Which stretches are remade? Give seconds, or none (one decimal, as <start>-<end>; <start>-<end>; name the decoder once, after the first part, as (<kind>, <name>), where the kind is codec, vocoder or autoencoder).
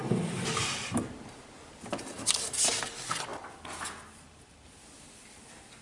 none